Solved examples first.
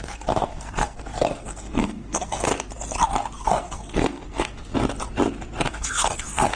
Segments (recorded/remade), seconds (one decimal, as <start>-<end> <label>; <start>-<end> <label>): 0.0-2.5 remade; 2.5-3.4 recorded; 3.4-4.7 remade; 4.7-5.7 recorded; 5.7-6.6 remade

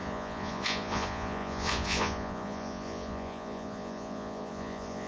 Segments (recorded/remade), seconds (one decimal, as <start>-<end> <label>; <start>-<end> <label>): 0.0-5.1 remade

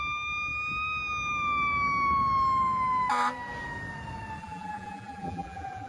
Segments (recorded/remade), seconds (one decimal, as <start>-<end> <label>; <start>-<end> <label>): 0.0-4.4 recorded; 4.4-5.9 remade